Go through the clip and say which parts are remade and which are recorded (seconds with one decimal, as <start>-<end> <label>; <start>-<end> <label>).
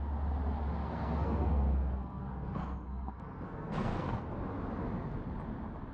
0.0-0.8 recorded; 0.8-4.3 remade; 4.3-5.9 recorded